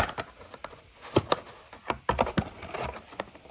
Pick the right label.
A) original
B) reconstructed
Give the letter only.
A